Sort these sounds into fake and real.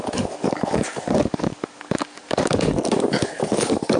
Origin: fake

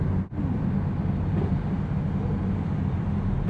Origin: real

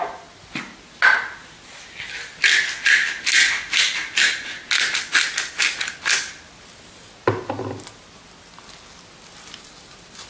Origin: real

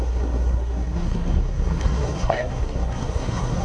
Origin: fake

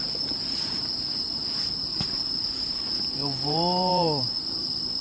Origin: fake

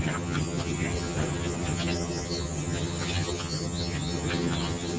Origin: fake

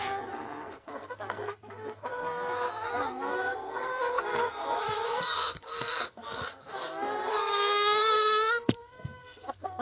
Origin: fake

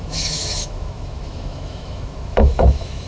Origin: fake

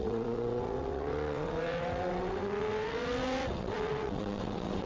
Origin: fake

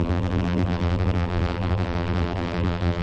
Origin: fake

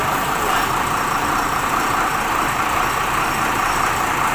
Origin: fake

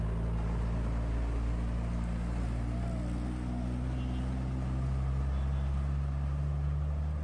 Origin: real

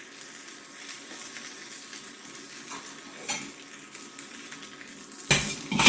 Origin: real